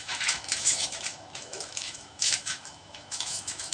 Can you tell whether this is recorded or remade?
remade